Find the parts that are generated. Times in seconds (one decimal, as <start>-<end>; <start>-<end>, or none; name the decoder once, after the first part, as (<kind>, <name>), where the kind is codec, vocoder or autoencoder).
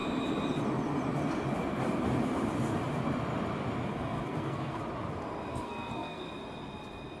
3.9-4.8 (codec, SNAC); 5.5-6.2